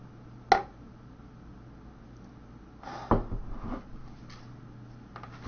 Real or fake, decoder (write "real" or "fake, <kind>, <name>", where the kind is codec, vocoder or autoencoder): real